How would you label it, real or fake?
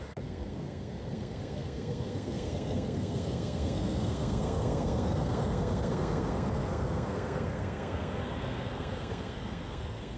fake